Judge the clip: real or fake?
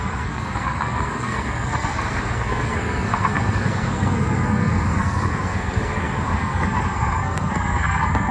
fake